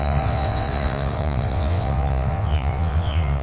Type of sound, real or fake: fake